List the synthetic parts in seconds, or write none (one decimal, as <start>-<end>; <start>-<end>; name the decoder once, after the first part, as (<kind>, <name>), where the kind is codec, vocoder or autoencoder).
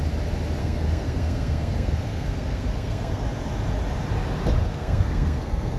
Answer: 0.6-3.2 (codec, SNAC); 4.6-5.8